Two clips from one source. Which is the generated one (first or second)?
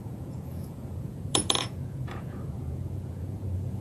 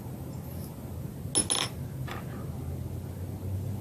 first